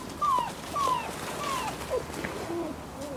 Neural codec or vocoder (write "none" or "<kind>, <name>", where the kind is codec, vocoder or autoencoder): none